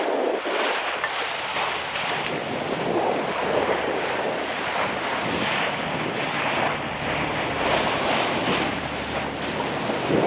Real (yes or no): yes